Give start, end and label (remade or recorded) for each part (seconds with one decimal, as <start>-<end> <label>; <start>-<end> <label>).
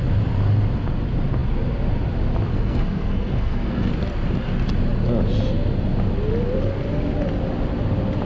0.0-2.5 recorded; 2.5-3.9 remade; 3.9-8.3 recorded